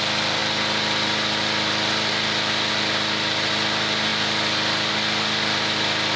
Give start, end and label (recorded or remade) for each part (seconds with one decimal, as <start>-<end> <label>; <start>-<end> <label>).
0.0-6.2 recorded